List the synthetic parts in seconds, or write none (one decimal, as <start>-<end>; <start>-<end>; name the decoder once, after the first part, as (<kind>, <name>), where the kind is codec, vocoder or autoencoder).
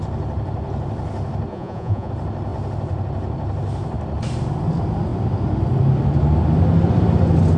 1.5-2.1 (vocoder, Vocos)